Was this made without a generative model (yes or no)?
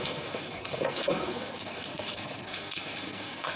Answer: no